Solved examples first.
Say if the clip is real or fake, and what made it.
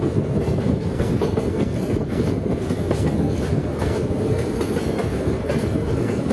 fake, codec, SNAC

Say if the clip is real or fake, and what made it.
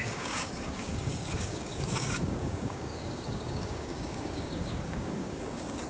fake, codec, DAC